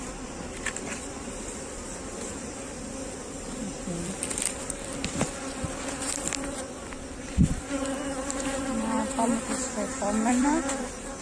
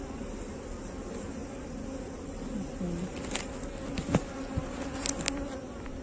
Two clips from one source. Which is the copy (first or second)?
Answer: first